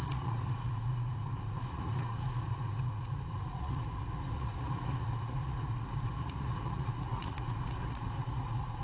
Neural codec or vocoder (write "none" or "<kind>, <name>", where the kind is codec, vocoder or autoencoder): vocoder, Vocos